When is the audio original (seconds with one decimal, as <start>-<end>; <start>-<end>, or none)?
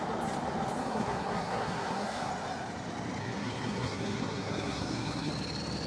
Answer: 0.0-0.8; 2.3-3.2; 5.3-5.9